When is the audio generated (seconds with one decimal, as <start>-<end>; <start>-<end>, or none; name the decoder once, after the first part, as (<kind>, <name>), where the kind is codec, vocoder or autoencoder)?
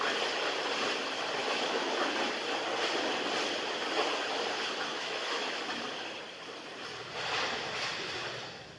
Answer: 1.4-2.1 (autoencoder, DAC-VAE); 4.9-5.6